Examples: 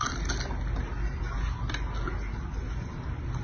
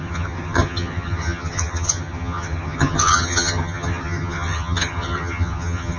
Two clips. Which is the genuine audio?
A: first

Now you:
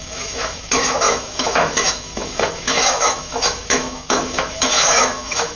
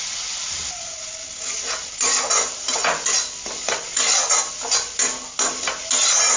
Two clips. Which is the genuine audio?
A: second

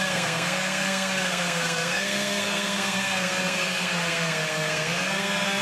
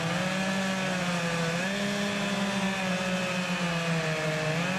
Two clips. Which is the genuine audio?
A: second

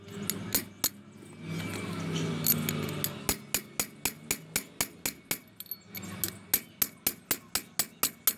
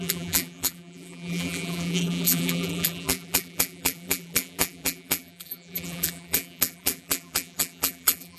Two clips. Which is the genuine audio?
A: first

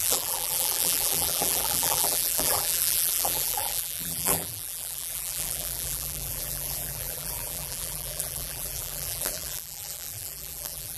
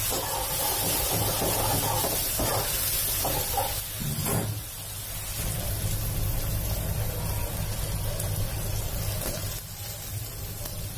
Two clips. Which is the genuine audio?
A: second